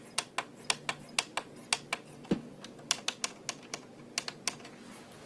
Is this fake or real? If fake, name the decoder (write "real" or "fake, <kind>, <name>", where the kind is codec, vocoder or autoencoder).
real